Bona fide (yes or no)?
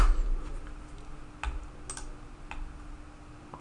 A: yes